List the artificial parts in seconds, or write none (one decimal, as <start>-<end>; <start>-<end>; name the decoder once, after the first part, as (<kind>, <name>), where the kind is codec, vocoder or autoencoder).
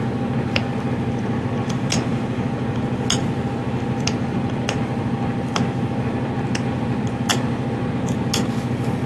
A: none